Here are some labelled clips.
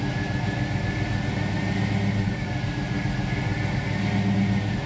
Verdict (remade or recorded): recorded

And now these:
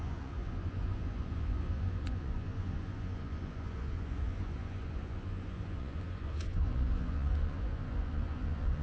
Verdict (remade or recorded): remade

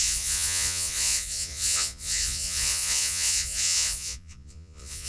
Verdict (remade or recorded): remade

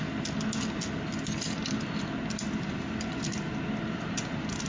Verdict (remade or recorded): recorded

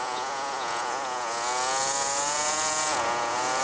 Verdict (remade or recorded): remade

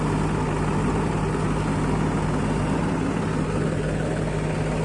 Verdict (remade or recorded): recorded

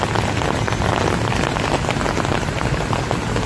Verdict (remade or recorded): recorded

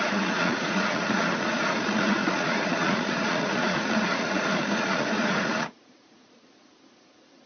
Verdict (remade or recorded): remade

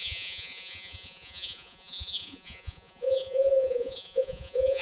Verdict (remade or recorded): remade